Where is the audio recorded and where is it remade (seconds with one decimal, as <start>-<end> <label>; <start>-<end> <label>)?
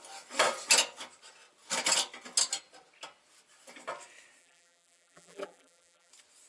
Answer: 0.0-4.4 recorded; 4.4-6.1 remade; 6.1-6.5 recorded